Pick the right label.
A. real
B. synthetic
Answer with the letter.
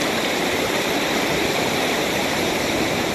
B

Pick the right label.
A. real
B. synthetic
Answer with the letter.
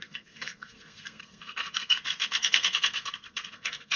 B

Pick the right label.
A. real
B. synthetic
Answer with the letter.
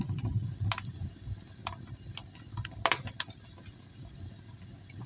A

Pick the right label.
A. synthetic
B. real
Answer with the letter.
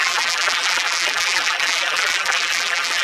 A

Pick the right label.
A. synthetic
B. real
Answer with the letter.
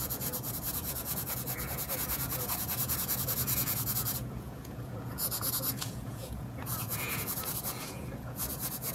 A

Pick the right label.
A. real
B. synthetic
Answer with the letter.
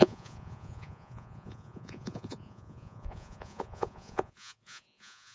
B